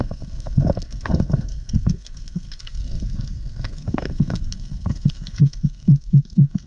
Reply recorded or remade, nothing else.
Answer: remade